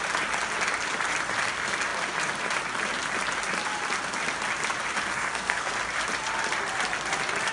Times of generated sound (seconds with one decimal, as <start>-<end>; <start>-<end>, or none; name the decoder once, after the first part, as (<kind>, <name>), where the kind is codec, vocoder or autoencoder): 5.1-5.7 (codec, SNAC)